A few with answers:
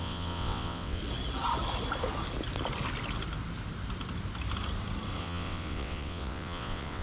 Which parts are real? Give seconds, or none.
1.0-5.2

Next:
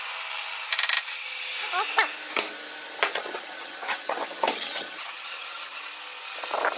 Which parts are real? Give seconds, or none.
0.0-3.1; 5.8-6.8

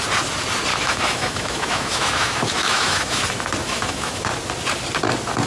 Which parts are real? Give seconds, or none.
0.0-0.7; 3.2-3.6; 4.3-5.5

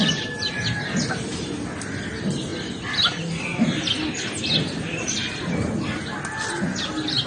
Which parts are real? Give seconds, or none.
0.0-7.3

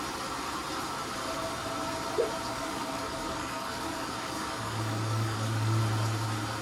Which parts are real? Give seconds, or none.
0.0-2.5; 5.8-6.6

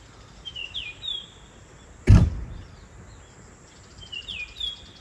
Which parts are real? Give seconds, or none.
none

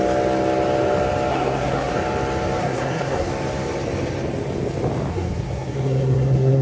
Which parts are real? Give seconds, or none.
0.0-1.3; 2.0-2.6; 3.3-5.1

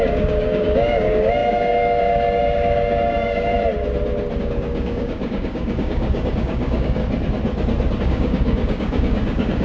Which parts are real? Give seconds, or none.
3.5-4.4; 7.0-8.0